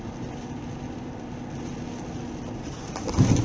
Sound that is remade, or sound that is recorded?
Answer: recorded